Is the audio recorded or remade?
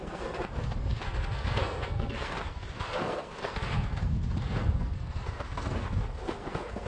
remade